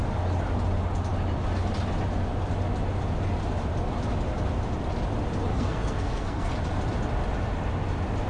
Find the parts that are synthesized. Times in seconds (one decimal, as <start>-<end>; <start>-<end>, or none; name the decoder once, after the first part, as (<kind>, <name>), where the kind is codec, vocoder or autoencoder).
5.5-6.5 (codec, SNAC)